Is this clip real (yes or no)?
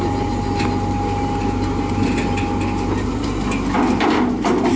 yes